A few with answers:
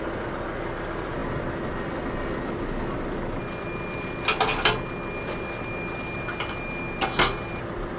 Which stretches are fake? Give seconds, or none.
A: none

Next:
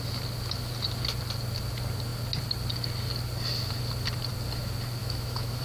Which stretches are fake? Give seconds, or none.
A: 5.0-5.6

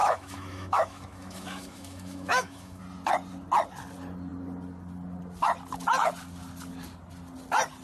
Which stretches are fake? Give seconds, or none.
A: 0.0-2.8

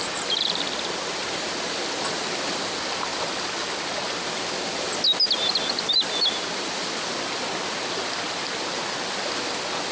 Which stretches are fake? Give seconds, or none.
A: none

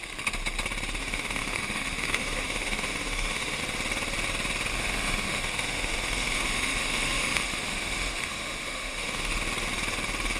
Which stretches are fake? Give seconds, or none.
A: 1.0-3.6; 4.7-9.3

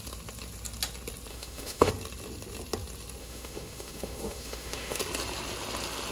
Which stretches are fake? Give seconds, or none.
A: 1.3-1.9; 3.2-5.0

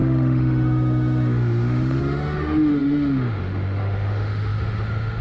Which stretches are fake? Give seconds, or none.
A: 0.0-5.2

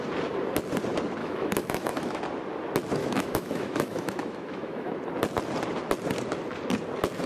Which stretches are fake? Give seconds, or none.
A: 1.2-2.2; 3.0-4.9